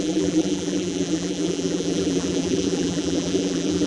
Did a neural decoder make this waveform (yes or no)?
yes